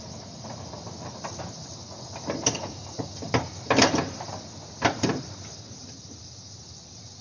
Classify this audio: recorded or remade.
recorded